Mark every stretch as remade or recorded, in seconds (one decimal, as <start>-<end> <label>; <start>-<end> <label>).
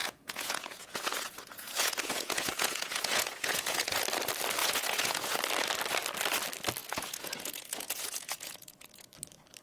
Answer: 0.0-4.0 remade; 4.0-4.6 recorded; 4.6-5.4 remade; 5.4-6.8 recorded; 6.8-9.1 remade; 9.1-9.6 recorded